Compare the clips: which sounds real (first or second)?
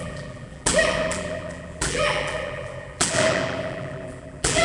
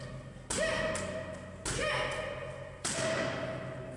second